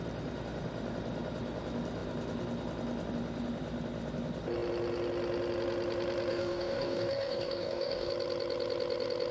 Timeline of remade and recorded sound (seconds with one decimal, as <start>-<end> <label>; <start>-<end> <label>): 0.0-6.3 recorded; 6.3-8.1 remade; 8.1-9.3 recorded